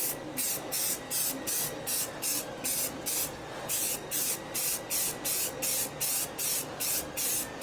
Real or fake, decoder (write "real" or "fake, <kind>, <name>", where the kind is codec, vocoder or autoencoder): real